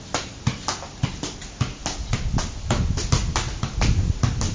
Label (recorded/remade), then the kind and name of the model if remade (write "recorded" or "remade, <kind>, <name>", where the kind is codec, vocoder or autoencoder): recorded